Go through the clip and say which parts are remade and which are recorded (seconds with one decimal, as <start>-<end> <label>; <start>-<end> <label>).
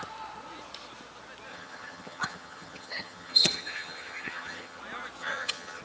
0.0-1.5 recorded; 1.5-4.8 remade; 4.8-5.2 recorded; 5.2-5.8 remade